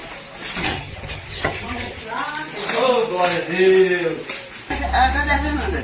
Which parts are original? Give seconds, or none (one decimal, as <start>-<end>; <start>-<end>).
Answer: 0.0-0.6; 2.0-5.8